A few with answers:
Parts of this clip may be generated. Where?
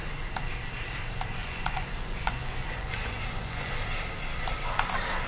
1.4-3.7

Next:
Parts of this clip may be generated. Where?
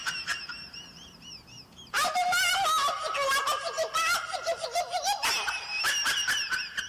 0.0-2.5; 3.6-6.9